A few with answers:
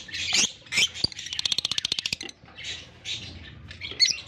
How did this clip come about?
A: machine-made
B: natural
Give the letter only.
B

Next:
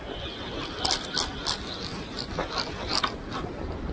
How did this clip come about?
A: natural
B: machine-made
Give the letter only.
A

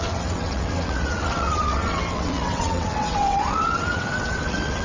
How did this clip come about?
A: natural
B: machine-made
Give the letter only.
B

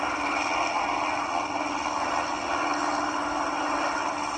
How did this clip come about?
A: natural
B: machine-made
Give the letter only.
A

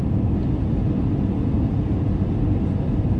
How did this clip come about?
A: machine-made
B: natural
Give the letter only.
B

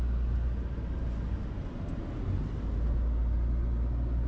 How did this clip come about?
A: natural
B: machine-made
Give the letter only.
A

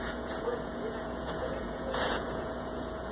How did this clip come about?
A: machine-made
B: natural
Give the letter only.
A